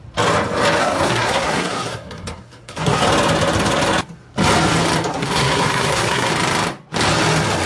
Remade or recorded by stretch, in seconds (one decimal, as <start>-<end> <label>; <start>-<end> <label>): 0.0-0.8 recorded; 0.8-3.0 remade; 3.0-5.1 recorded; 5.1-6.3 remade; 6.3-7.7 recorded